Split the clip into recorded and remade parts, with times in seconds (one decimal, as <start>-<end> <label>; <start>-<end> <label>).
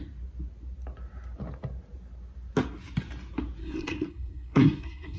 0.0-3.6 recorded; 3.6-5.2 remade